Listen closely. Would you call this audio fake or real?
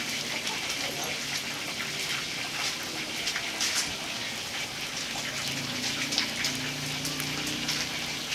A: real